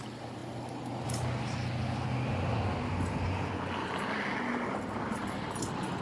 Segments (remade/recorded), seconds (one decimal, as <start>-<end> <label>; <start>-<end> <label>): 0.0-6.0 recorded